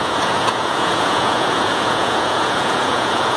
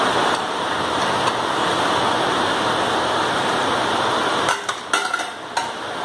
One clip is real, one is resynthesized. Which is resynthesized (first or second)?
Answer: first